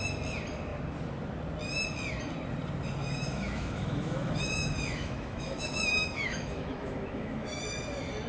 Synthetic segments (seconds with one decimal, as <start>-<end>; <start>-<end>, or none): 3.0-7.6